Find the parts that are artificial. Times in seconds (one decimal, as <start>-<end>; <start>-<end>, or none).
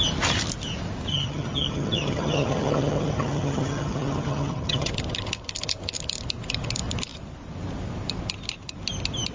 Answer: 1.1-4.9